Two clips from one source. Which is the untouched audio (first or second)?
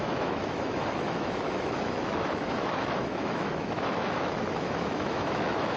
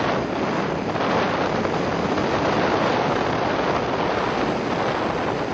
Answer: second